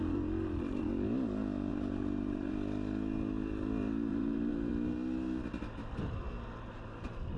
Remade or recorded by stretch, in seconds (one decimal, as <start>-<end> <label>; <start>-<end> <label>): 0.0-1.7 recorded; 1.7-2.5 remade; 2.5-4.1 recorded; 4.1-4.7 remade; 4.7-7.4 recorded

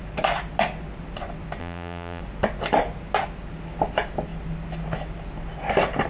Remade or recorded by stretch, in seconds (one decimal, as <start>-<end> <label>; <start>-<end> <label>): 0.0-1.6 recorded; 1.6-2.2 remade; 2.2-6.1 recorded

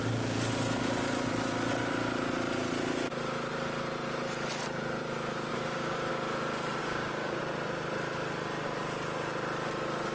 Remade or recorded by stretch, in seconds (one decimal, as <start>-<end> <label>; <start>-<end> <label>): 0.0-5.5 recorded; 5.5-6.1 remade; 6.1-6.8 recorded; 6.8-7.4 remade; 7.4-10.1 recorded

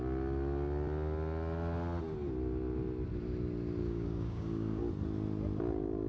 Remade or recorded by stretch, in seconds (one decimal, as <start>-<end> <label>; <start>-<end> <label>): 0.0-3.8 recorded; 3.8-4.8 remade; 4.8-6.1 recorded

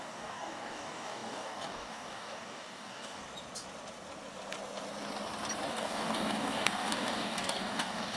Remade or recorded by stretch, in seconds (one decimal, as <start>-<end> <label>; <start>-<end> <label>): 0.0-3.2 remade; 3.2-5.7 recorded; 5.7-8.2 remade